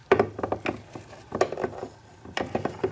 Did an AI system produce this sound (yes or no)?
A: no